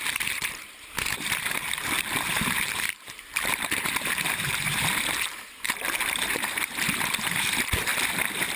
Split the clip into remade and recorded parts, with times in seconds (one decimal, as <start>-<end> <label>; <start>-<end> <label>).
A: 0.0-7.9 remade; 7.9-8.6 recorded